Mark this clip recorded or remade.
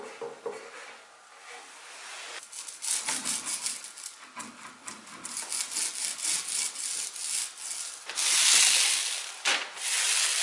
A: recorded